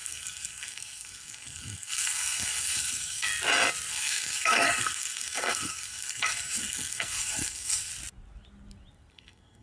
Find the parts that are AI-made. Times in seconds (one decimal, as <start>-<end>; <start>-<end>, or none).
0.0-3.3; 3.9-7.9; 9.1-9.6